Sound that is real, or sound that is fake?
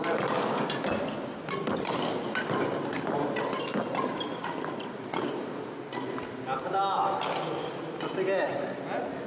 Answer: real